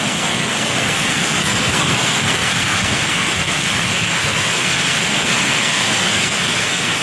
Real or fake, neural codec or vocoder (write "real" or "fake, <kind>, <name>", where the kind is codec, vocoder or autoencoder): fake, codec, SNAC